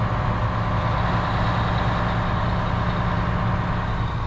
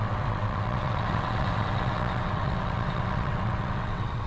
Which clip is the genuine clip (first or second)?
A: first